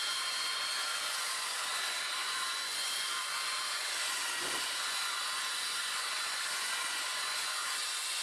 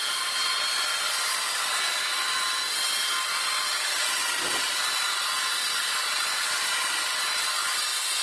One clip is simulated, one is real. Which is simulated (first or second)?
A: first